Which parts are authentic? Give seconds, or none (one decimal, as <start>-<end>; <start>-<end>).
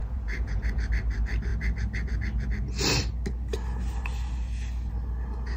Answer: 0.6-5.6